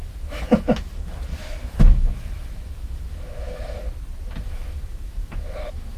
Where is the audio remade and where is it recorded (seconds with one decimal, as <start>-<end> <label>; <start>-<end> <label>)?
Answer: 0.0-3.8 remade; 3.8-4.4 recorded; 4.4-6.0 remade